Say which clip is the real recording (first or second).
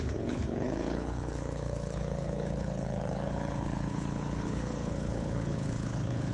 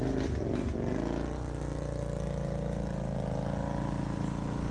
second